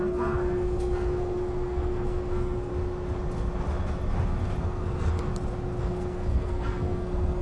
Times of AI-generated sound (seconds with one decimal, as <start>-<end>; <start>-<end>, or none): 0.0-2.7; 4.6-5.3; 5.8-7.4